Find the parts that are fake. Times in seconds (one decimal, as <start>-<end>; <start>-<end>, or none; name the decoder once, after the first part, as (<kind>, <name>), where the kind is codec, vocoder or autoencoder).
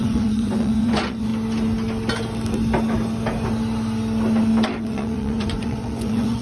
0.0-1.3 (vocoder, Vocos); 4.8-6.4